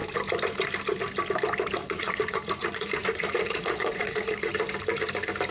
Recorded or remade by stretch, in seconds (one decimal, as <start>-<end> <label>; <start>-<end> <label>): 0.0-1.8 recorded; 1.8-4.5 remade; 4.5-5.5 recorded